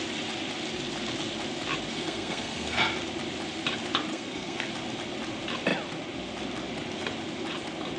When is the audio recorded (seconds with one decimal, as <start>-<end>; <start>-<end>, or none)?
0.0-1.9; 2.8-4.1; 4.7-8.0